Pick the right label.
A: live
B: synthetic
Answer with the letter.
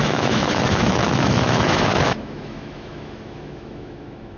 B